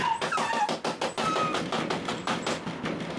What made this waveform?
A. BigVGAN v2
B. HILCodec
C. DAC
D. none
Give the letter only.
D